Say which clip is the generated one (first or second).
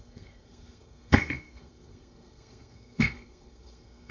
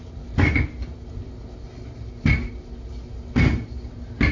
first